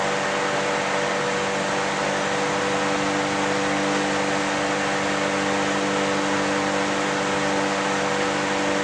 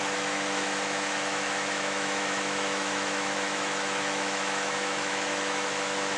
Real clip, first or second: first